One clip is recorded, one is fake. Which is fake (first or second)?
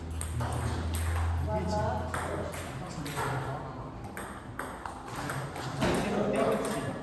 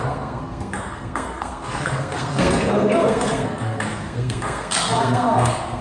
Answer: second